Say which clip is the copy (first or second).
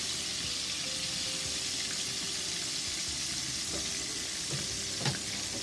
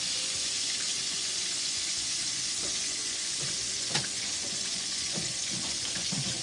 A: second